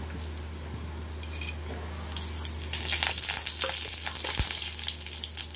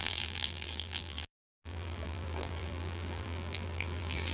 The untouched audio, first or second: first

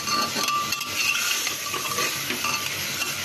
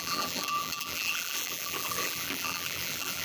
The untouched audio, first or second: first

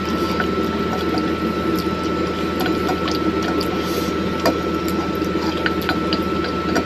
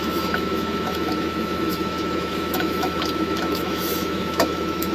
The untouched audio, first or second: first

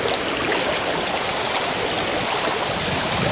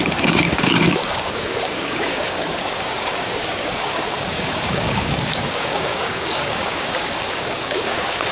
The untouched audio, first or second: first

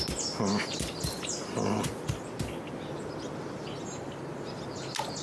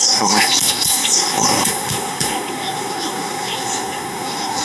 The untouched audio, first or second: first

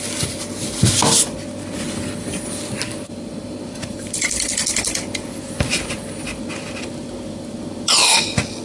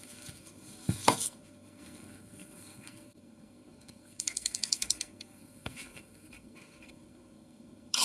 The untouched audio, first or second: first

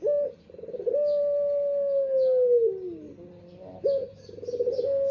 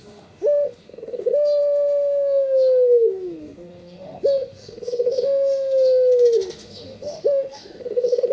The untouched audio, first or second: first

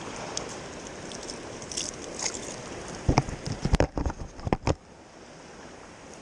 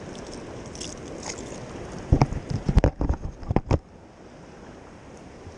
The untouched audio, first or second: second